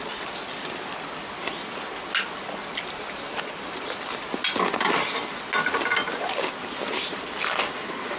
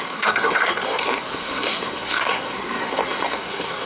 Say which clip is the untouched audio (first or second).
first